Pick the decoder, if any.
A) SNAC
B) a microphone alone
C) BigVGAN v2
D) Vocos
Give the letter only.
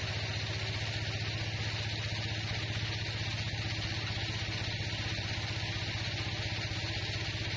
B